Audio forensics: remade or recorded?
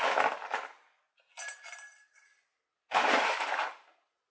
recorded